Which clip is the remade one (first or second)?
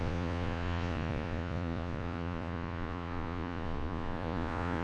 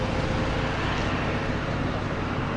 first